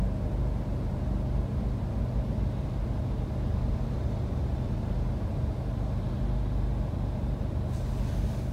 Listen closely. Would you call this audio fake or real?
real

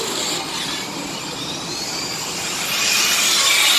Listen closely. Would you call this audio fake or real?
real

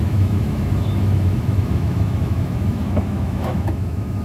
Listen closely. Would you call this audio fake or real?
fake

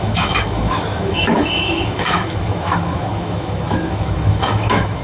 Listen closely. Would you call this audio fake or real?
fake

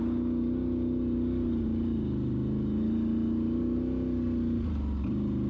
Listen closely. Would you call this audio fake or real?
real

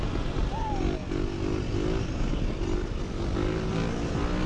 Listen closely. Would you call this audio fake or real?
real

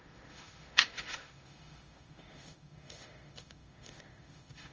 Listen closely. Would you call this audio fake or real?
fake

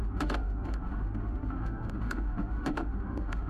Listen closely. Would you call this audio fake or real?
fake